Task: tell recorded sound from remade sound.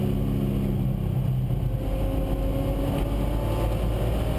recorded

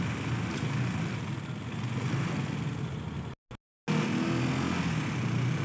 recorded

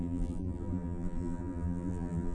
remade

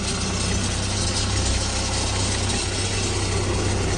recorded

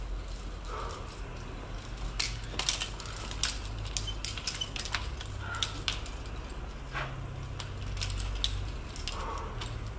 recorded